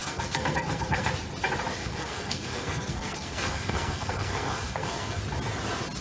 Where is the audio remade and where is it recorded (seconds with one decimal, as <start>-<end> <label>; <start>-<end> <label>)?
0.0-1.1 remade; 1.1-1.8 recorded; 1.8-5.2 remade; 5.2-6.0 recorded